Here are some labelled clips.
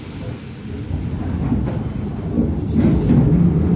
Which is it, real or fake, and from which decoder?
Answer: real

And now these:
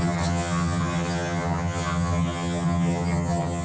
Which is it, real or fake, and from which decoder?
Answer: fake, vocoder, HiFi-GAN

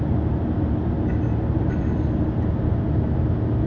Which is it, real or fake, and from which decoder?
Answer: real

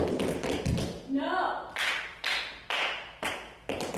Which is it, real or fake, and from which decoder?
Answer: real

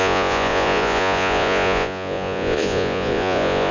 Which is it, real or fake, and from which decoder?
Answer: fake, vocoder, Vocos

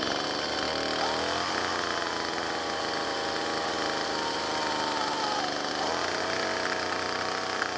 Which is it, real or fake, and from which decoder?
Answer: real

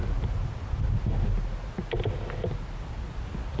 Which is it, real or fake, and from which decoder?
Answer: real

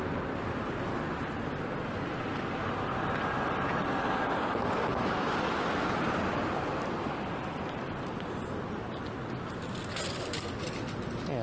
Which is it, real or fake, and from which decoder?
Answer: real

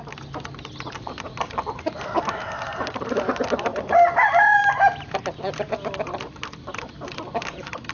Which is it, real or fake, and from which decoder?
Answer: real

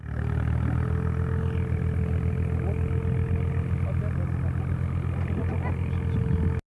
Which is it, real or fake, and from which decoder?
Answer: real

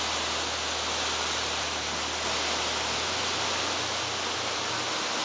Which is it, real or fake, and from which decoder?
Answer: real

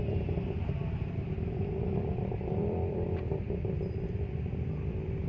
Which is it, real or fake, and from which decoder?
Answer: fake, vocoder, BigVGAN v2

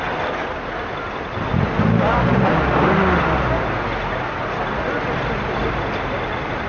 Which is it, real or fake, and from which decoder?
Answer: real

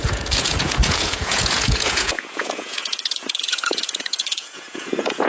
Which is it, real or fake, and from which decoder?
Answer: fake, vocoder, Vocos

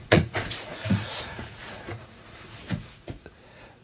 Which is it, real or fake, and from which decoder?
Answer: fake, vocoder, Vocos